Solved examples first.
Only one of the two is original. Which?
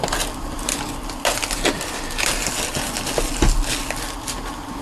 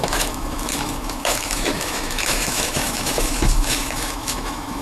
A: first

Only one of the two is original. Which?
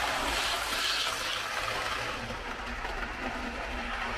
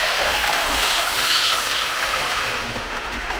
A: first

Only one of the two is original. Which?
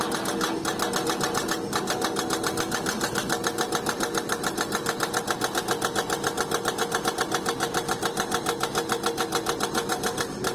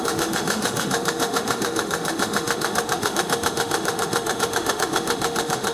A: first